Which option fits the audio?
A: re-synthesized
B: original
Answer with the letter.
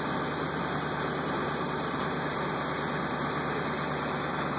B